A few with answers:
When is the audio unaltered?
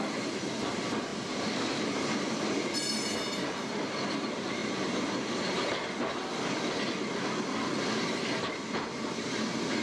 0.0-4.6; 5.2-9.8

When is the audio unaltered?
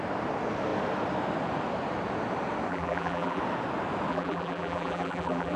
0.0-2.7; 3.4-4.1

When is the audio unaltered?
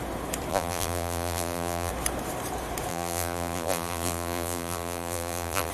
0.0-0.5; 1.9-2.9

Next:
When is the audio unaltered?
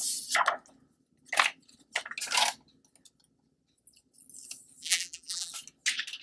0.0-4.8; 5.5-6.2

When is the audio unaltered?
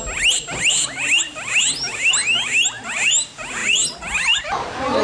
0.0-5.0